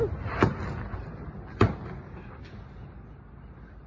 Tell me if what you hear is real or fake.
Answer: real